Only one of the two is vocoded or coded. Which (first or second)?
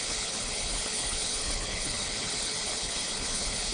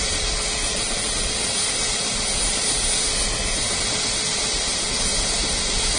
first